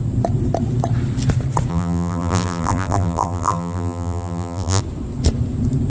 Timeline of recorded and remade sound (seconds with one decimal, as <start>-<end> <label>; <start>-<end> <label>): 0.0-1.7 recorded; 1.7-4.8 remade; 4.8-5.9 recorded